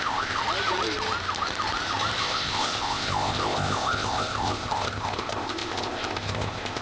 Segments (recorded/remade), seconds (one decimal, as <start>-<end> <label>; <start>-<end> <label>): 0.0-0.4 remade; 0.4-2.2 recorded; 2.2-6.8 remade